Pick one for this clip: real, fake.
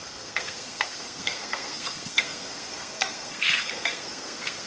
fake